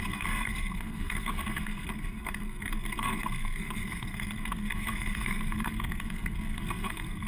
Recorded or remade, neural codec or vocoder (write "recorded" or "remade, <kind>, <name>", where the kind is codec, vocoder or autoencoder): remade, codec, SNAC